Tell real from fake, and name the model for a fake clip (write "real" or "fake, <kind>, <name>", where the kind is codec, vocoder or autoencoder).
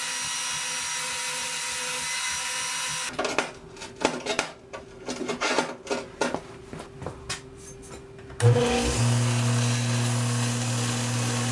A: real